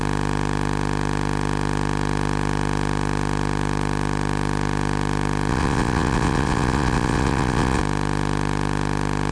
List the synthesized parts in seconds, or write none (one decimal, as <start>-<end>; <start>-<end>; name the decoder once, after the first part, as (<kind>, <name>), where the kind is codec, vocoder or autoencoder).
5.5-7.8 (vocoder, WaveNeXt)